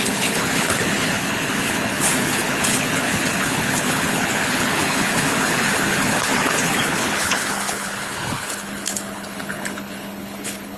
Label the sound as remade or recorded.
remade